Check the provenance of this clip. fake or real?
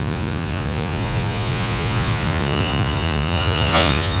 fake